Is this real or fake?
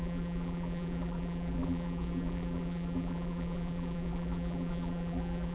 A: fake